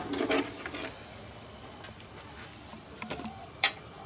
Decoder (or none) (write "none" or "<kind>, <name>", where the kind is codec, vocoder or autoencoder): none